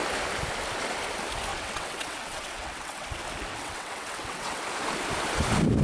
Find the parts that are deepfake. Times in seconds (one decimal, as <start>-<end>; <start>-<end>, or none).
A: 1.5-3.1; 3.5-4.6